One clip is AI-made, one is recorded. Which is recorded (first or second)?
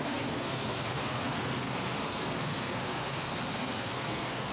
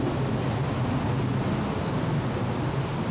second